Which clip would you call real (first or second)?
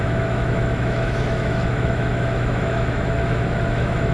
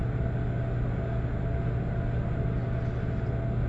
second